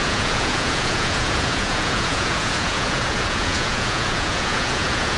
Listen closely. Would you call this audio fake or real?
fake